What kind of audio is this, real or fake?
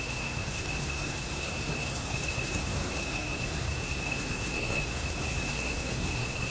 fake